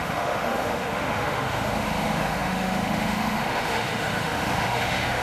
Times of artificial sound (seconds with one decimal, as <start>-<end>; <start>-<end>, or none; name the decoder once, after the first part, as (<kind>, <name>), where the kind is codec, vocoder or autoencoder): 0.0-5.2 (autoencoder, DAC-VAE)